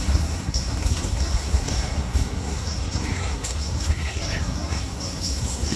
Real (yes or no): no